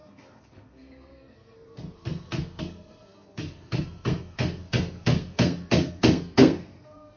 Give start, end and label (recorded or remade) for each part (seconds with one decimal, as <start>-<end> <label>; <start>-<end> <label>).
0.0-7.2 remade